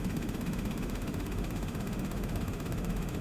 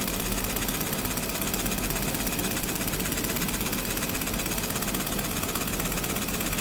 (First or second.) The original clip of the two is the second